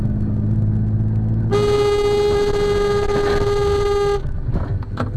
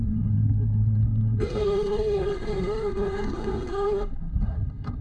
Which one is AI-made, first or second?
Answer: second